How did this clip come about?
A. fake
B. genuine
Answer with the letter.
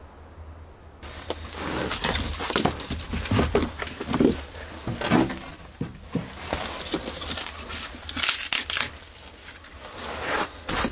B